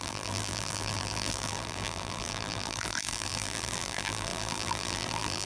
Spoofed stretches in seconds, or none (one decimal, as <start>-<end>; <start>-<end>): 0.0-5.5